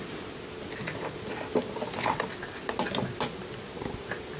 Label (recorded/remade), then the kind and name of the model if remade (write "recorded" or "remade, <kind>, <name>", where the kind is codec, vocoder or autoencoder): recorded